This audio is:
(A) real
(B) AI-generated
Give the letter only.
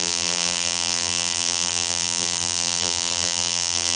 B